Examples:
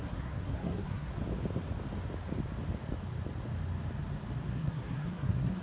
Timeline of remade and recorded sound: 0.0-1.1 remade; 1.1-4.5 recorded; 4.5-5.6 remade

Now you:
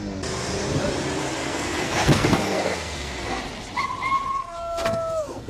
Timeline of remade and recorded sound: 0.0-1.4 recorded; 1.4-3.4 remade; 3.4-4.4 recorded; 4.4-5.5 remade

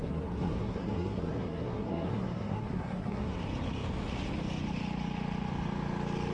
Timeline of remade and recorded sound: 0.0-3.4 remade; 3.4-6.3 recorded

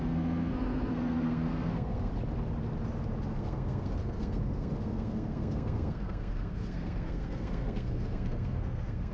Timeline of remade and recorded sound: 0.0-2.1 remade; 2.1-3.3 recorded; 3.3-9.1 remade

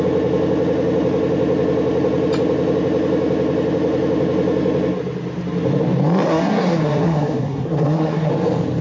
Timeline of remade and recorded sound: 0.0-6.3 recorded; 6.3-8.3 remade; 8.3-8.8 recorded

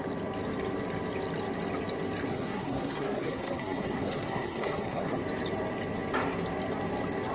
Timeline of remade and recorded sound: 0.0-2.3 recorded; 2.3-5.2 remade; 5.2-7.3 recorded

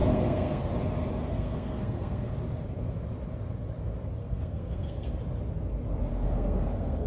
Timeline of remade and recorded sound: 0.0-0.7 remade; 0.7-1.3 recorded; 1.3-2.3 remade; 2.3-4.2 recorded; 4.2-5.2 remade; 5.2-6.1 recorded; 6.1-7.1 remade

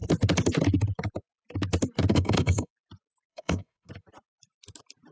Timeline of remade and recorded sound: 0.0-2.1 recorded; 2.1-2.7 remade; 2.7-3.3 recorded; 3.3-3.9 remade; 3.9-5.1 recorded